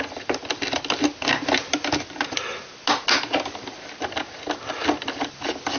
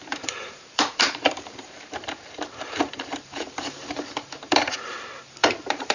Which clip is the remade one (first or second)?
second